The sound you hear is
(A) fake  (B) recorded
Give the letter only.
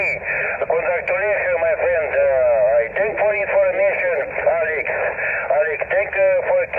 B